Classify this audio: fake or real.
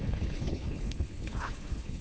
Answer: fake